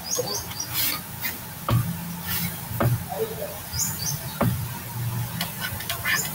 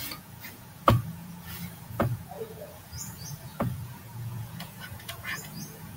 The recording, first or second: first